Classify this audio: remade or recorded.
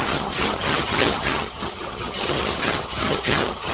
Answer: remade